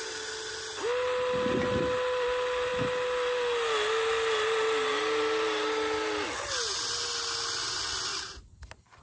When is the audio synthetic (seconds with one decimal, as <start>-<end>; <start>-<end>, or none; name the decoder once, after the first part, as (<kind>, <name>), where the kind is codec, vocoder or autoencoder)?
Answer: none